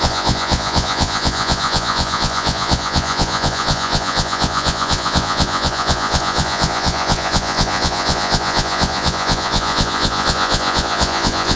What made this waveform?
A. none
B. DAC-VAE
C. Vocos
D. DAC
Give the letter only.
C